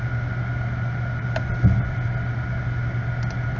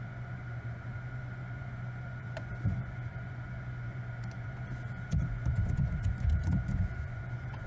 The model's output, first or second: second